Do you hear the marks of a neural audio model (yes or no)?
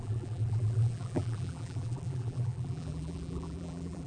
yes